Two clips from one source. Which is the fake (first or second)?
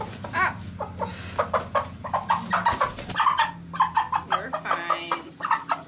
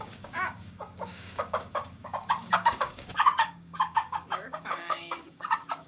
second